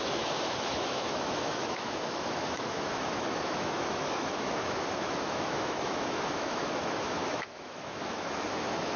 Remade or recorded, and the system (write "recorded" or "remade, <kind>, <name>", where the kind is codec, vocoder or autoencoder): remade, autoencoder, DAC-VAE